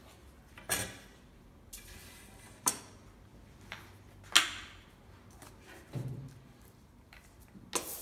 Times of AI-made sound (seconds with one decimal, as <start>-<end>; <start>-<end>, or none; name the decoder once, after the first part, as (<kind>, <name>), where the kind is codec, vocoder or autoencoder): 2.0-2.8 (vocoder, BigVGAN v2); 5.4-6.1